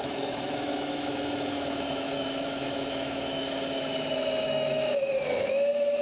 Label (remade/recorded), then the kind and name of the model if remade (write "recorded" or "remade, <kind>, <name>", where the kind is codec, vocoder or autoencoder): remade, autoencoder, DAC-VAE